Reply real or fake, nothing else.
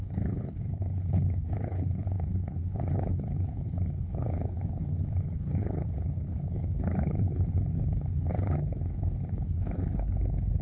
fake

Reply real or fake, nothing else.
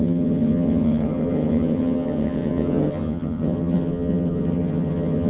fake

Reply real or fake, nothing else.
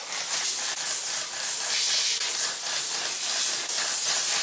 real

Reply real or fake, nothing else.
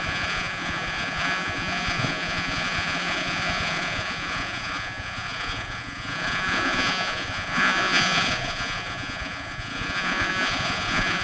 fake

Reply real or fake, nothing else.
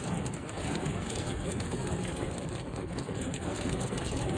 fake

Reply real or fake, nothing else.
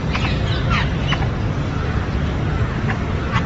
real